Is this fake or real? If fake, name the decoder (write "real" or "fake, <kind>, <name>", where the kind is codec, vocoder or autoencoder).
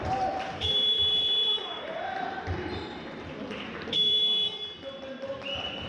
fake, vocoder, BigVGAN v2